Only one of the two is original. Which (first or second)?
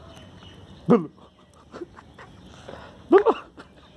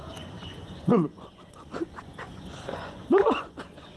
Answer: first